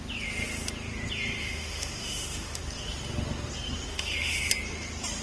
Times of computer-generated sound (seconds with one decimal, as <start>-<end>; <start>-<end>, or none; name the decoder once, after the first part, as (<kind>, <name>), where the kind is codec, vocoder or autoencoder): 1.4-2.6 (autoencoder, DAC-VAE); 3.9-4.4